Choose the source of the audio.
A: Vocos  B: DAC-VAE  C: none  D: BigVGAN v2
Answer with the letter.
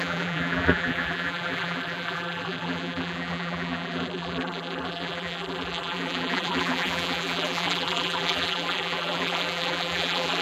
D